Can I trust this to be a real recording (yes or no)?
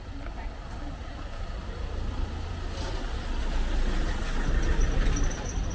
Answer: yes